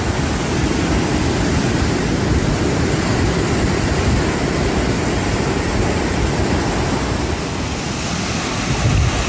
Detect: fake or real real